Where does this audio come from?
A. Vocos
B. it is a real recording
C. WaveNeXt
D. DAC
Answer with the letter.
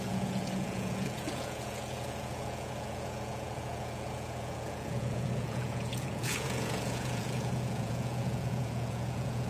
A